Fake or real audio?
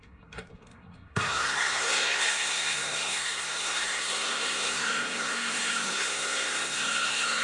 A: fake